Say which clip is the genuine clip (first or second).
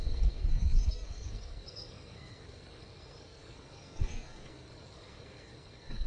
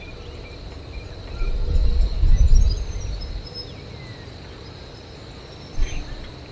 second